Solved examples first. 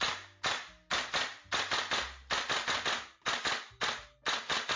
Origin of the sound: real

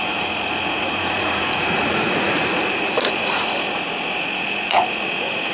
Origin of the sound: fake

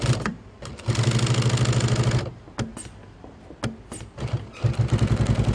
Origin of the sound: real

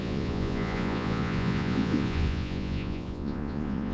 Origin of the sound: fake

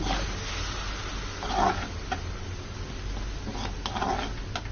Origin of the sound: real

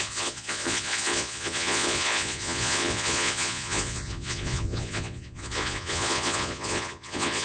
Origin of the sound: fake